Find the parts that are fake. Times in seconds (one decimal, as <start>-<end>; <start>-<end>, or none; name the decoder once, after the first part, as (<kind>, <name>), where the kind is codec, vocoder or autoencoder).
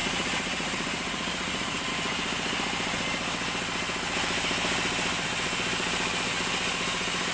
0.0-1.9 (vocoder, Vocos)